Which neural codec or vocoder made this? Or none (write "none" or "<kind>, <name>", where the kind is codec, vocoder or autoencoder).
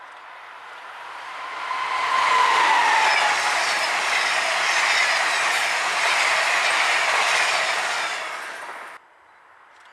none